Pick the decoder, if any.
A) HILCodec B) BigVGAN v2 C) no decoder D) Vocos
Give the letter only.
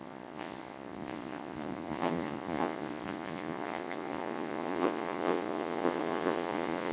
D